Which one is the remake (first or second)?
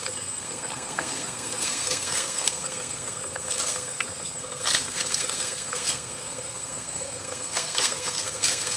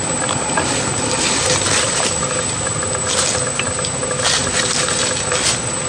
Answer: first